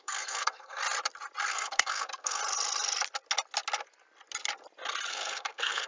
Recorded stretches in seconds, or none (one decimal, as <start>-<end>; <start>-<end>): 0.8-1.5; 2.4-5.1